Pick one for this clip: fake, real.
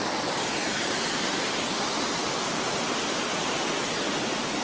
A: real